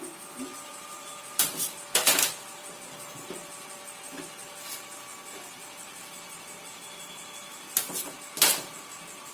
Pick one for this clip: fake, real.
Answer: fake